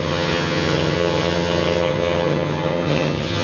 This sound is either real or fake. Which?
fake